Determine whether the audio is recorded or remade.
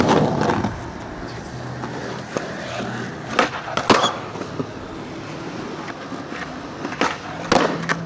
recorded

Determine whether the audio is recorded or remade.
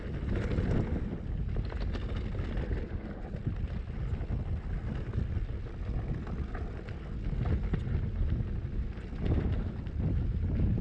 recorded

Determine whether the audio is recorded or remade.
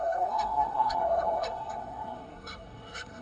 remade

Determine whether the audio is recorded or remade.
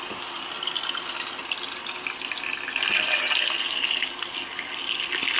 recorded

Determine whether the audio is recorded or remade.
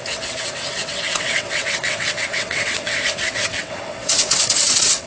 remade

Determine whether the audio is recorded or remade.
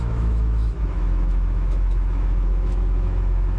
remade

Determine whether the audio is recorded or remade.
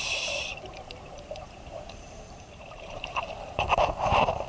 remade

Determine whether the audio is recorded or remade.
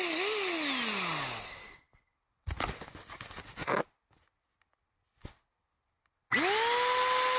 recorded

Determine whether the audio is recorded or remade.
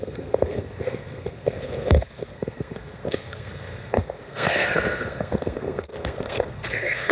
remade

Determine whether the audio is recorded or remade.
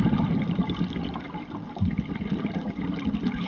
recorded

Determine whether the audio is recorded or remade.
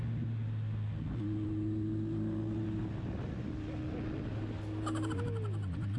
recorded